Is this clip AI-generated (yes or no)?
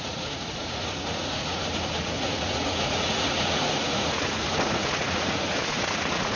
yes